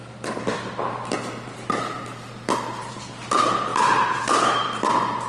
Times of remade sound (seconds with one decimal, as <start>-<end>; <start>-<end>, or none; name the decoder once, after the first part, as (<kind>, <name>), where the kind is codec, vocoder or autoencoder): none

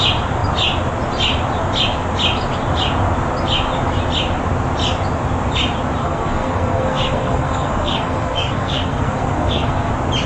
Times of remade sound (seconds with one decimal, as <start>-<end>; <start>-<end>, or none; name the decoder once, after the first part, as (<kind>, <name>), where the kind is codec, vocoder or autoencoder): 6.0-9.9 (codec, SNAC)

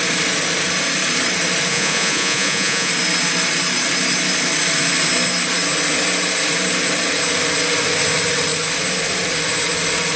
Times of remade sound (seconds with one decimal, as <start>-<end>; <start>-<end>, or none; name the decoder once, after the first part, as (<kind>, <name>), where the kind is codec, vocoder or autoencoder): 1.7-2.9 (vocoder, Vocos)

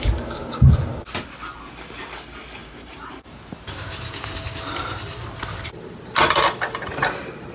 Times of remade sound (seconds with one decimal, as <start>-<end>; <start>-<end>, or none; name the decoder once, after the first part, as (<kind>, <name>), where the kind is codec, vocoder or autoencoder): 2.6-4.2 (vocoder, BigVGAN v2)

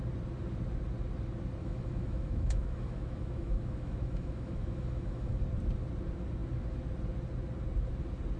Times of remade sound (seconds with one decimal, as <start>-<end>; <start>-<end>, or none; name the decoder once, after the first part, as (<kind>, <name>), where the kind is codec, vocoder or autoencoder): 1.6-5.4 (autoencoder, DAC-VAE)

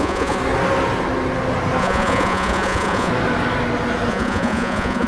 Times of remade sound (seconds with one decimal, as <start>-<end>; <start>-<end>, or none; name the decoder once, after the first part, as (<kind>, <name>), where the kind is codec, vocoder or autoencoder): 0.0-0.4 (vocoder, Vocos); 1.8-3.1; 4.1-5.1